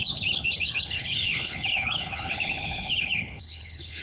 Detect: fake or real fake